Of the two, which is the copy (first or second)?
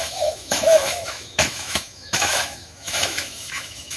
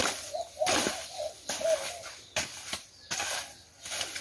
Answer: first